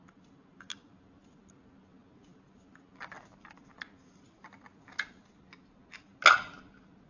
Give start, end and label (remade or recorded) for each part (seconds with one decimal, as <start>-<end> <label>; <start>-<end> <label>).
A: 0.0-7.1 recorded